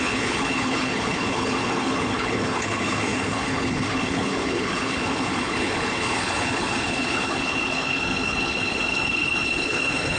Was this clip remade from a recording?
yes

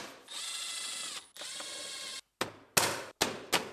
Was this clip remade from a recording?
no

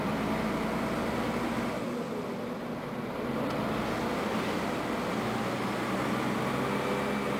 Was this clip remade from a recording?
no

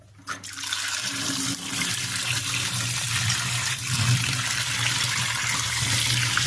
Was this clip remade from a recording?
yes